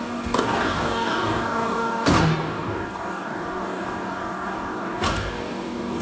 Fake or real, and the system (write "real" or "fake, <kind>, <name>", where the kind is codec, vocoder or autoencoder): fake, codec, DAC